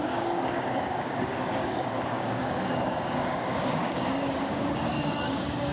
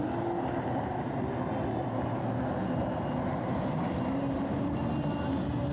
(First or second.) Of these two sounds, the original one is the second